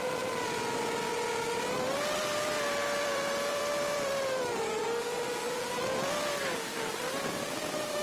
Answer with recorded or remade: remade